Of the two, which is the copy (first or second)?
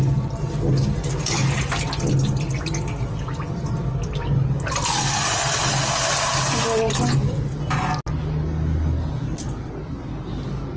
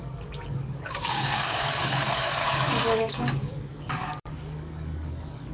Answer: second